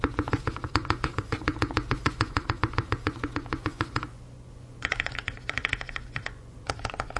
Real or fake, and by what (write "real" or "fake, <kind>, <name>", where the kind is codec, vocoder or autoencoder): fake, vocoder, Vocos